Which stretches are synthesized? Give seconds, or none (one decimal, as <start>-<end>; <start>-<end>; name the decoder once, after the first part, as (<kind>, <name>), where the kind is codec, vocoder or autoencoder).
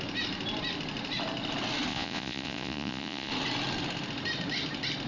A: 1.9-3.3 (vocoder, Vocos)